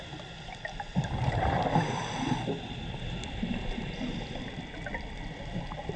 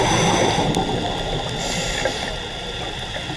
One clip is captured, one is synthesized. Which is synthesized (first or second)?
first